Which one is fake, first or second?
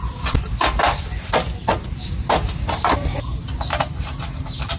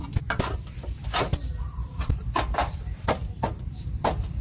second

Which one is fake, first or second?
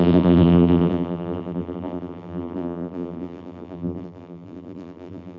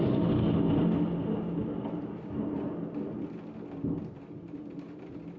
first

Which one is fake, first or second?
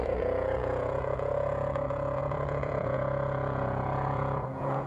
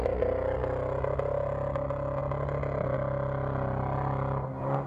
first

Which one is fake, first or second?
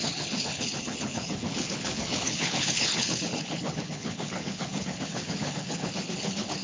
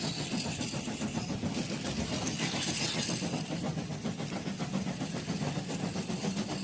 first